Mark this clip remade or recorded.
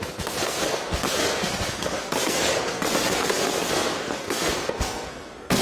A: remade